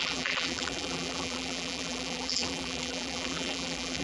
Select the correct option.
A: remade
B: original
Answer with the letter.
A